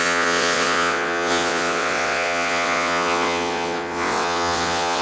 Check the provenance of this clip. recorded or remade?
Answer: remade